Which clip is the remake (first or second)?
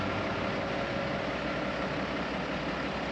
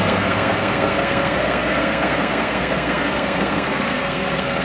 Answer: second